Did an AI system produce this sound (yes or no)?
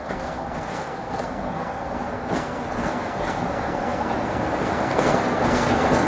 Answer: yes